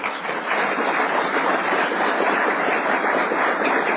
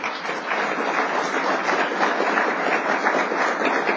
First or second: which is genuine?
second